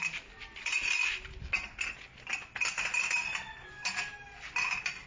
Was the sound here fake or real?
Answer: real